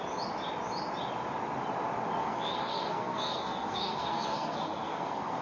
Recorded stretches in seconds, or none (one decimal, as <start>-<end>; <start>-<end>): 0.0-2.2